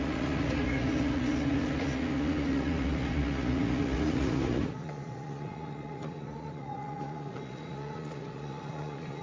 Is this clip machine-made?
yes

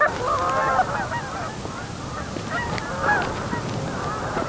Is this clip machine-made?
no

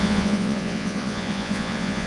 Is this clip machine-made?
yes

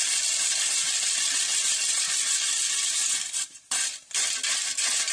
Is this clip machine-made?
no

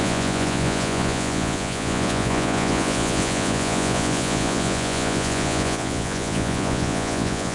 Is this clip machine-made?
yes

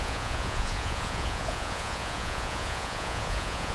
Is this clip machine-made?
yes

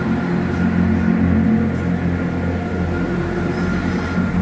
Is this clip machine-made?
no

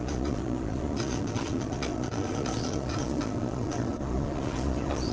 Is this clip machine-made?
yes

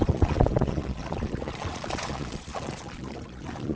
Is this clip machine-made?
yes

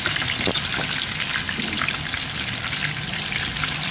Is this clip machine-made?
no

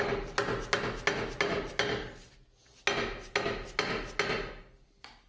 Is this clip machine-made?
no